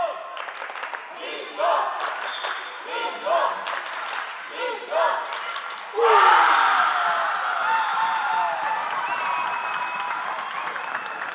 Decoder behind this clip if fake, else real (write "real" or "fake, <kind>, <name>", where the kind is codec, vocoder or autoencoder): real